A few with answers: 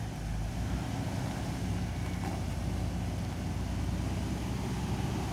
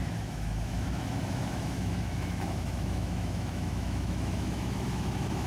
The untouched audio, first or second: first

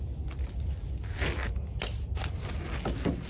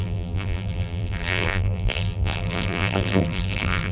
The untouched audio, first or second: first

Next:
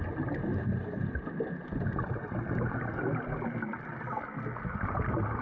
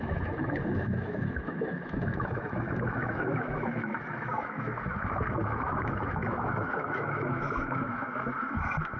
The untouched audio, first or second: first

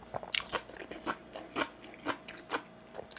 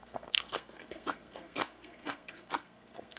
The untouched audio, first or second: first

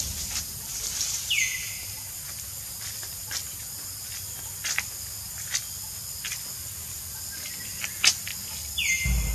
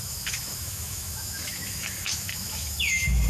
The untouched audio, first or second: first